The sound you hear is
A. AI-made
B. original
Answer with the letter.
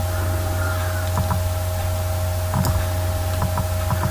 B